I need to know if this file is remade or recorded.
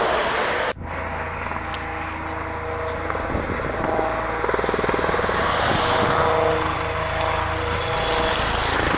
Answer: recorded